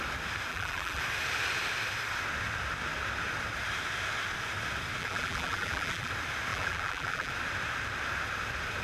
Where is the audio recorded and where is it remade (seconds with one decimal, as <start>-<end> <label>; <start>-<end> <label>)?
0.0-0.5 recorded; 0.5-1.0 remade; 1.0-5.0 recorded; 5.0-6.1 remade; 6.1-6.5 recorded; 6.5-7.3 remade; 7.3-8.8 recorded